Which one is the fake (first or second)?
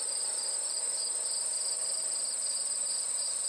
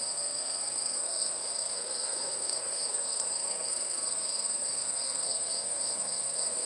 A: second